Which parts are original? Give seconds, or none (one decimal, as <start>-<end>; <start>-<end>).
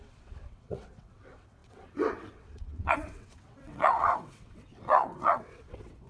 none